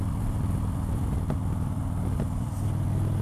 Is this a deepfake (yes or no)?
no